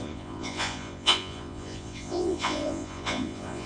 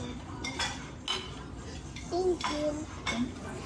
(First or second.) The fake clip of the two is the first